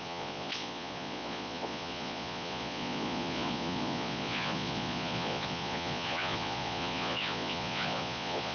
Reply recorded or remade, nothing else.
remade